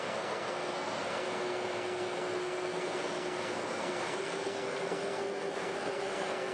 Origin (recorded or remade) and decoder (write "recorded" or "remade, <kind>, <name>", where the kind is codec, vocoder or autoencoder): remade, codec, SNAC